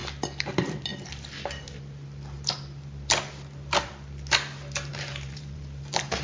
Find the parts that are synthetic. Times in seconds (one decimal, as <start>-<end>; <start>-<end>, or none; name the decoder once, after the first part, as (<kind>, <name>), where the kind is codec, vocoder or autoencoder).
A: 4.9-6.2 (vocoder, BigVGAN v2)